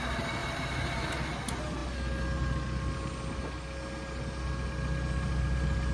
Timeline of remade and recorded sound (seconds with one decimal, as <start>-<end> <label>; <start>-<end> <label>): 0.0-0.4 recorded; 0.4-1.1 remade; 1.1-5.9 recorded